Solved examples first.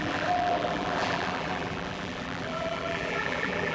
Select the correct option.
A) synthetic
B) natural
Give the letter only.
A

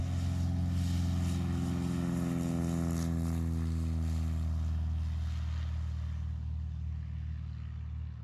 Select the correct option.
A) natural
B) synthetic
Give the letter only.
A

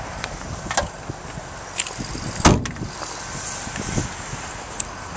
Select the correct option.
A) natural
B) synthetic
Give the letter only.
A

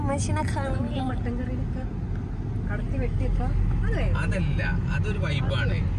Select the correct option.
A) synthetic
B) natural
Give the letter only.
B